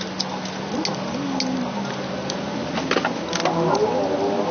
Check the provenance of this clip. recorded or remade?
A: recorded